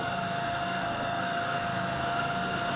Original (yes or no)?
no